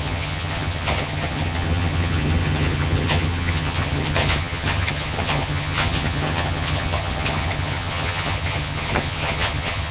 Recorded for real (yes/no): no